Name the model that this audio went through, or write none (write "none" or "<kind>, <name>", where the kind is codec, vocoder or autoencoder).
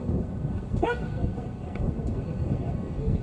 codec, SNAC